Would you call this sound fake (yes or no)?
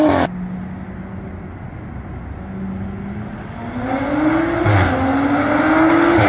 no